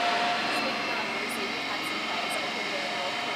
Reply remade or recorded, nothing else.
recorded